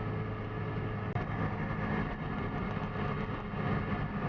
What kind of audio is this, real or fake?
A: real